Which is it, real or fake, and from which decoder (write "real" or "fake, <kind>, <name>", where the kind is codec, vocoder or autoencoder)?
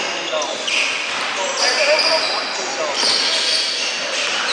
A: real